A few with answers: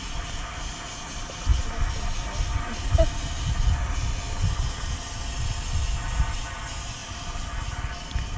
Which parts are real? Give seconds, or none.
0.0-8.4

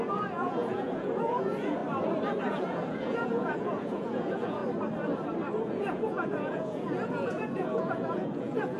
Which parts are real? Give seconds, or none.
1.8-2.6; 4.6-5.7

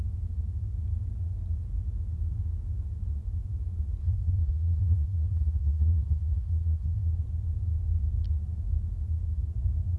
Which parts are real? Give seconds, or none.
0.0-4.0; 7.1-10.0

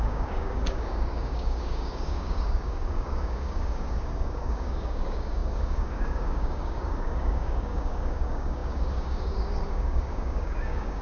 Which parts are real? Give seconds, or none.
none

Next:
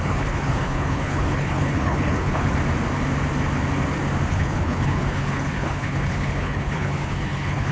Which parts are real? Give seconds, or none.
2.5-4.3

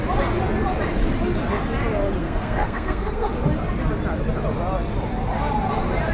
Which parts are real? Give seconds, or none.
0.0-2.2; 3.3-6.1